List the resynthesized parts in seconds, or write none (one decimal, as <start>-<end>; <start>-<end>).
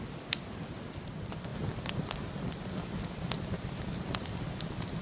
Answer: none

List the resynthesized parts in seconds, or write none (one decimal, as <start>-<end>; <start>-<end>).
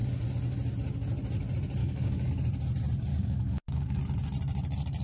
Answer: 1.8-2.3; 3.1-4.0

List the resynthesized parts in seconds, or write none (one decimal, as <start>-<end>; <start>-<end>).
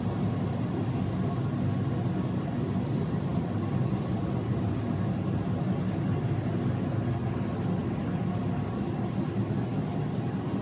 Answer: none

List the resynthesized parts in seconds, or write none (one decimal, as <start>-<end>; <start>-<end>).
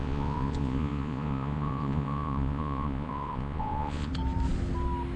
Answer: 0.0-4.1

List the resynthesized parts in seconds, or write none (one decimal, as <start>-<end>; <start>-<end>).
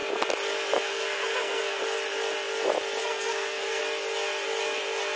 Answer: 0.8-1.8; 3.0-3.8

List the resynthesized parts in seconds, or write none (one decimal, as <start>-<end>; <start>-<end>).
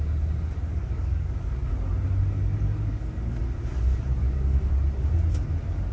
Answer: 0.7-1.7; 2.4-3.4; 4.2-4.7